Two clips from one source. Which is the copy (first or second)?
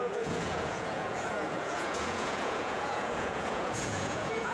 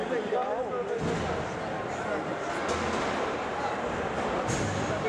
first